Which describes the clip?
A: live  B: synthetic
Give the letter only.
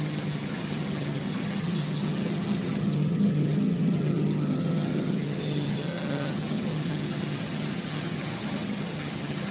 B